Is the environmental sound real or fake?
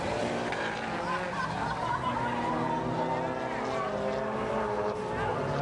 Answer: real